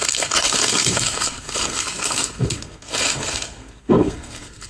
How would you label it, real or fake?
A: fake